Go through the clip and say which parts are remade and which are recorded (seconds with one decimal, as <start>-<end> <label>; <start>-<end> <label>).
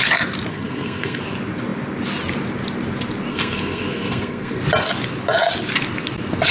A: 0.0-0.5 recorded; 0.5-1.2 remade; 1.2-3.3 recorded; 3.3-4.6 remade; 4.6-6.5 recorded